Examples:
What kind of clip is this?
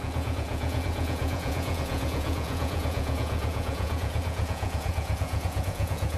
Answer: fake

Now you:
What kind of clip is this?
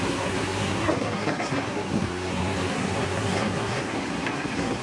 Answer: fake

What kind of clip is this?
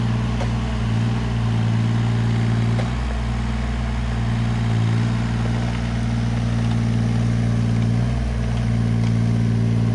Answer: real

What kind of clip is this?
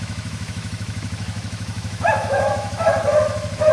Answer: fake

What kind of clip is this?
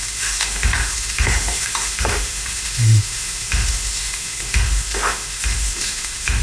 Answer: fake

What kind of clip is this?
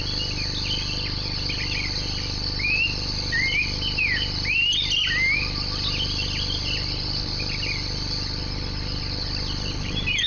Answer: real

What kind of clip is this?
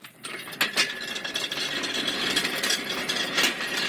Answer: real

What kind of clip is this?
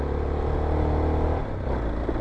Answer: real